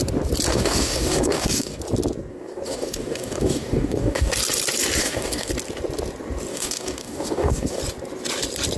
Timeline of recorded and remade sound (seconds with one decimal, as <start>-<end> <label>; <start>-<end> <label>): 0.0-0.5 recorded; 0.5-1.8 remade; 1.8-2.3 recorded; 2.3-4.3 remade; 4.3-5.0 recorded; 5.0-5.5 remade; 5.5-6.5 recorded; 6.5-7.8 remade; 7.8-8.8 recorded